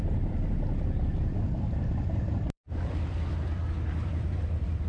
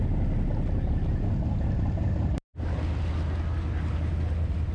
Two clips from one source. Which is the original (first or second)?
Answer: second